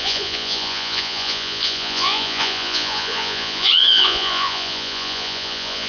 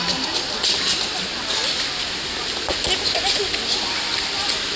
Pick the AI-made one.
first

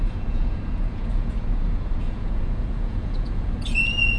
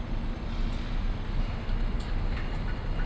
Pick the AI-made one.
first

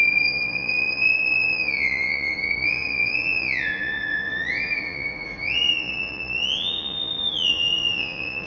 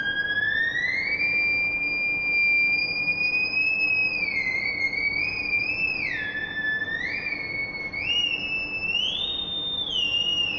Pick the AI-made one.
first